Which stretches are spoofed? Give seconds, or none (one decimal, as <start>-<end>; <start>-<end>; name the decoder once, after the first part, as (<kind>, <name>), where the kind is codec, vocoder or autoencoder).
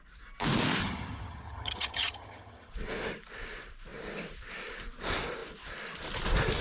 0.8-2.7 (vocoder, HiFi-GAN)